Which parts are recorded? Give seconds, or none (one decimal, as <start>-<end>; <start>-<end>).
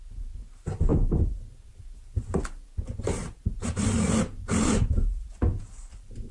0.0-0.9; 2.7-3.4; 5.4-6.3